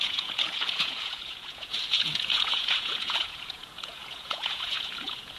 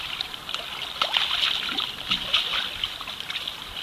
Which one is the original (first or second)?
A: second